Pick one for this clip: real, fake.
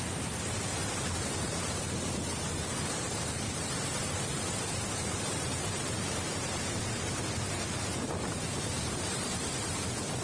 fake